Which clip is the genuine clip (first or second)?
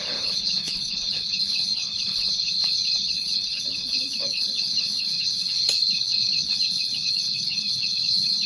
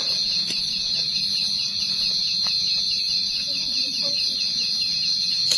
second